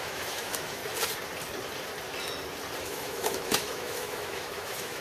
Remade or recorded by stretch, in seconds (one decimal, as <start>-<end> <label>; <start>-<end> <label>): 0.0-0.8 remade; 0.8-2.8 recorded; 2.8-5.0 remade